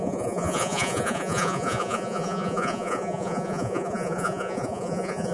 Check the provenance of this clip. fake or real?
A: fake